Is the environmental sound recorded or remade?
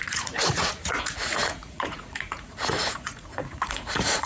remade